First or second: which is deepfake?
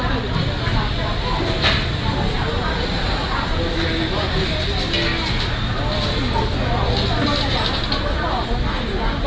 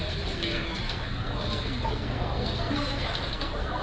second